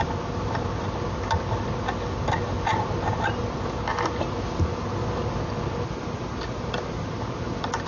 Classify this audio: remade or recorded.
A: recorded